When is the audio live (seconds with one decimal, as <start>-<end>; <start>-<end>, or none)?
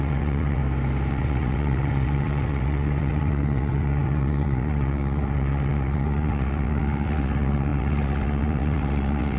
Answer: 0.6-1.1